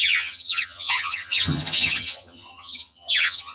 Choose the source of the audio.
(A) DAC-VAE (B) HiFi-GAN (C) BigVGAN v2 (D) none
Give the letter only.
B